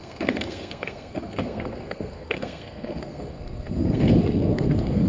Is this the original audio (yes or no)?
no